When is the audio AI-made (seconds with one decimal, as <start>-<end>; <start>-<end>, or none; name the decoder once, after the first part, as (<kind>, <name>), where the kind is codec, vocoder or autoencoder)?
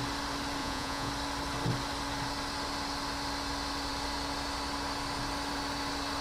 0.6-1.1 (vocoder, Vocos)